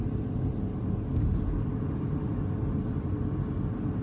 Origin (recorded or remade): recorded